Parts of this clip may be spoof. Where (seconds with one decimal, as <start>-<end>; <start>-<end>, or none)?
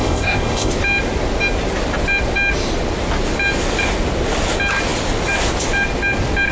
0.0-0.7